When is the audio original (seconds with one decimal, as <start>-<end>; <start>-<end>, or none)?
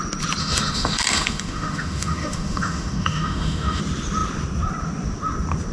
0.0-0.4; 3.8-5.7